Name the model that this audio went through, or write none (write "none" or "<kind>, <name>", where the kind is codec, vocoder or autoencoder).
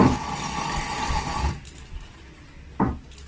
none